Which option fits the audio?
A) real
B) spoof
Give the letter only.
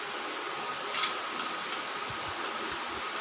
A